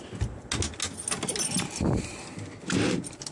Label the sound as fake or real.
real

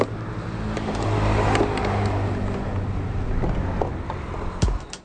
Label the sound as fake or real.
real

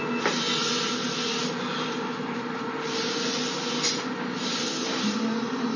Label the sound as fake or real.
real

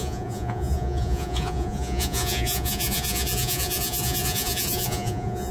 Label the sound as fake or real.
fake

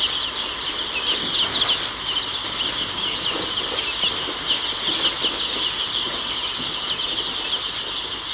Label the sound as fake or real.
real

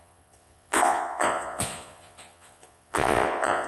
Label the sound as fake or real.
fake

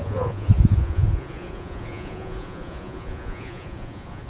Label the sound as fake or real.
fake